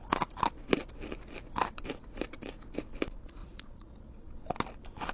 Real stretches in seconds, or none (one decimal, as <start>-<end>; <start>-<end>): 0.0-3.4; 3.9-5.1